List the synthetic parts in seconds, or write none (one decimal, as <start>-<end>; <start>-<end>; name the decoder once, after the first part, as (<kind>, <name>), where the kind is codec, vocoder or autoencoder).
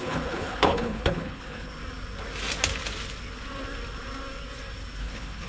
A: 0.0-1.7 (codec, HILCodec); 5.0-5.5